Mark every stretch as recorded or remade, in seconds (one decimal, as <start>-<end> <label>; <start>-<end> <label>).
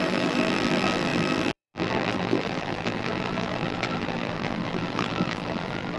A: 0.0-6.0 remade